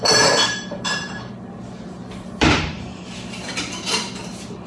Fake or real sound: fake